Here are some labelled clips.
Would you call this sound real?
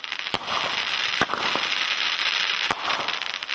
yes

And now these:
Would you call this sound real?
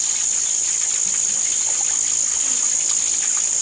yes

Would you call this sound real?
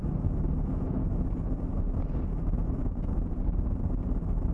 yes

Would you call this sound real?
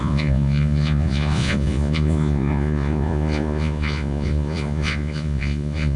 no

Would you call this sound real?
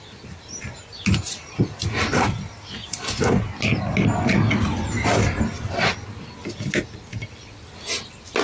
yes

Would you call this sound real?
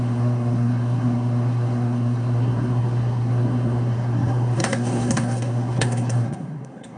no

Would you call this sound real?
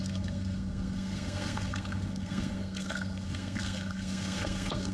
no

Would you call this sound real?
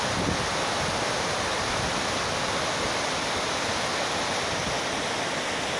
yes